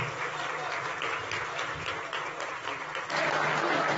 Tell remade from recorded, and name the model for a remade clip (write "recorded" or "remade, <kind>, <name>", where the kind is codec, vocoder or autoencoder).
recorded